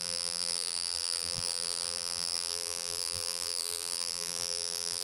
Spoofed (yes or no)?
yes